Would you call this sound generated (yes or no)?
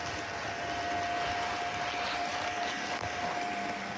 no